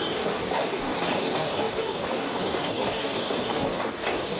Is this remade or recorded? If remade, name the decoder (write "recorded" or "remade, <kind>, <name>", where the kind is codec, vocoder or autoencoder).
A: remade, codec, DAC